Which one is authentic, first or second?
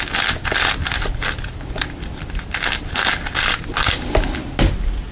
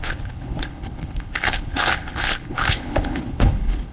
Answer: first